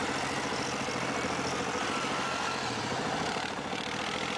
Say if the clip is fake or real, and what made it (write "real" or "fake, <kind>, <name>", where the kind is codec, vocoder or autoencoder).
real